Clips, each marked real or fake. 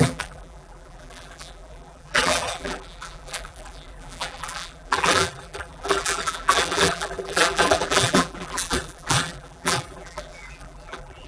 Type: fake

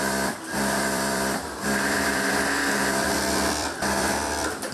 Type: fake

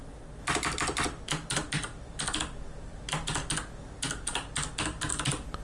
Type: real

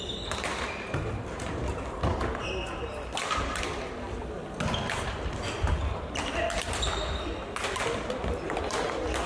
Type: real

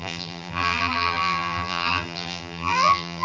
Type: fake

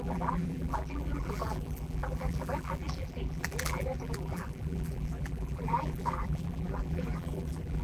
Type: fake